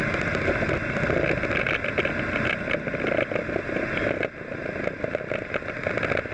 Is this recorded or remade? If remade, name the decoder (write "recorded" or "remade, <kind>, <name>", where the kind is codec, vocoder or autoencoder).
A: recorded